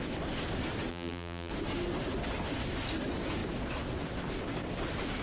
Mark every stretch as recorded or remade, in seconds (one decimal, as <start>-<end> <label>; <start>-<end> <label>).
0.0-0.9 recorded; 0.9-1.5 remade; 1.5-5.2 recorded